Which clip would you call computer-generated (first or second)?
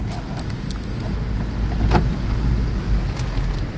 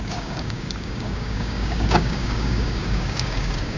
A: second